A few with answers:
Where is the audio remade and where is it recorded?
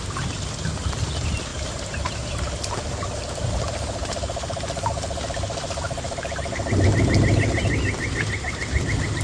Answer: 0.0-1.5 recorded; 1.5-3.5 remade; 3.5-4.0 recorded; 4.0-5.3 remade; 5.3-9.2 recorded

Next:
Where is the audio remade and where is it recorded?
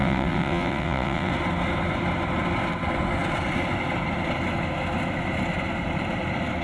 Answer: 0.0-1.3 remade; 1.3-6.6 recorded